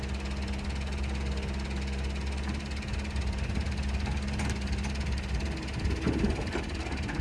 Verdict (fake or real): real